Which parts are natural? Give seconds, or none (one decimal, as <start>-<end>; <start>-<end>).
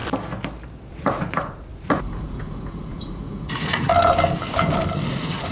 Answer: 0.0-0.9; 3.9-5.1